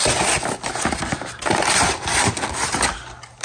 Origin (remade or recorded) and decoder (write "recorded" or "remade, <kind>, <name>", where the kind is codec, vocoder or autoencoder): recorded